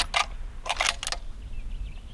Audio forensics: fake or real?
real